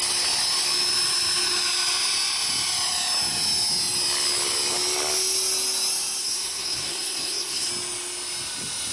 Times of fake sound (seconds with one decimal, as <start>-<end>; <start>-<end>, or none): 6.2-7.7